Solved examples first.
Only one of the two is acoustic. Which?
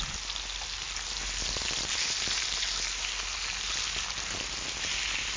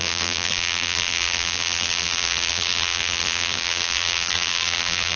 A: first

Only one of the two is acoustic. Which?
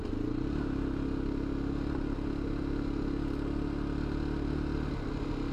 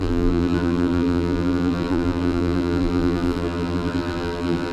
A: first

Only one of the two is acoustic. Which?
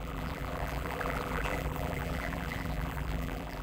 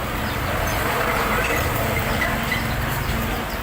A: second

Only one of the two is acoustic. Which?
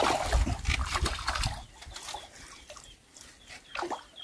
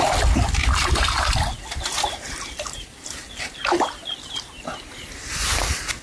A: first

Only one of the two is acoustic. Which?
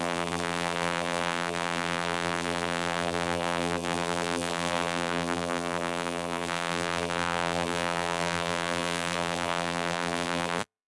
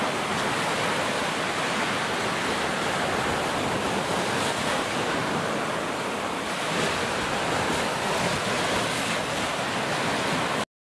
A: second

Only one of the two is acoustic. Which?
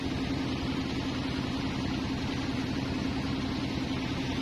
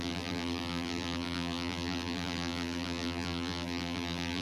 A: first